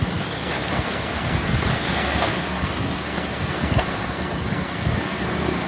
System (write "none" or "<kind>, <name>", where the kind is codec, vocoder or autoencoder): codec, SNAC